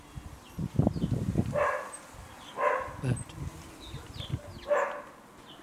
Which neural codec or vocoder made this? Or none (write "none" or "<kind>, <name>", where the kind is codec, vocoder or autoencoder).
none